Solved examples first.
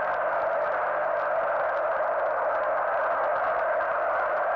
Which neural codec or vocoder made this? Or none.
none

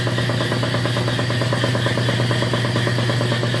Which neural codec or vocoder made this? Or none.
none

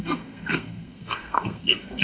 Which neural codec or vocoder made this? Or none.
codec, SNAC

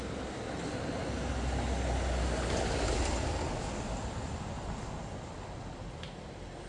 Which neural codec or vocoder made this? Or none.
none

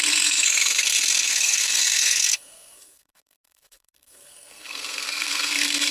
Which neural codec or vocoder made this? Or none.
codec, SNAC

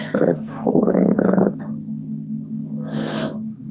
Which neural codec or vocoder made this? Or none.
codec, SNAC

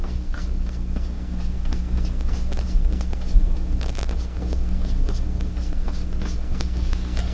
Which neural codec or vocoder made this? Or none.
codec, SNAC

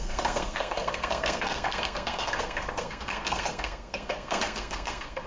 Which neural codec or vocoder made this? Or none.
codec, SNAC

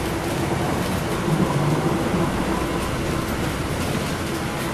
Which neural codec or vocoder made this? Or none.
none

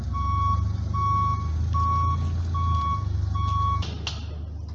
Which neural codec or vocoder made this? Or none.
none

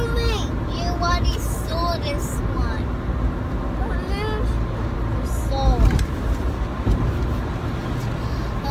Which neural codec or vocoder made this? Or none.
none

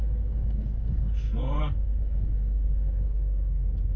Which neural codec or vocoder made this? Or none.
codec, SNAC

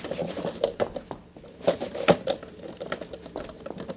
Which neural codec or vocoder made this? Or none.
none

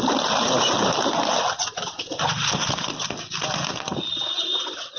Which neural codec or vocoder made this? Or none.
none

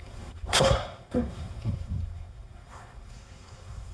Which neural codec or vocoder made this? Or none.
codec, SNAC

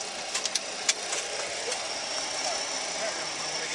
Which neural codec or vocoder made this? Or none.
none